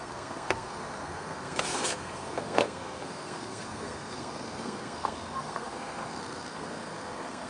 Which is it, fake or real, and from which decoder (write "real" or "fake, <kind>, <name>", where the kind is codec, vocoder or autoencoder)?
fake, codec, SNAC